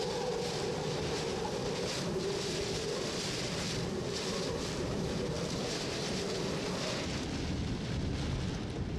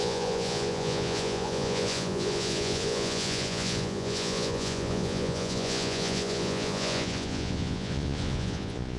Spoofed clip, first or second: second